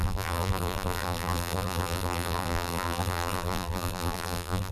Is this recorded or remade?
remade